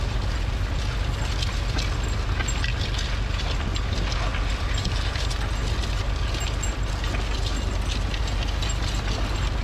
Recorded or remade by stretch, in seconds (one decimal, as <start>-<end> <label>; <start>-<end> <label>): 0.0-4.3 recorded; 4.3-5.2 remade; 5.2-9.6 recorded